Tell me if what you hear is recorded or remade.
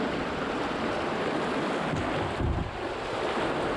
recorded